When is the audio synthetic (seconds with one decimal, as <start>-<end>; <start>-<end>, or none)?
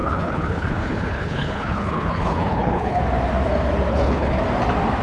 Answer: 0.0-3.0; 3.9-4.4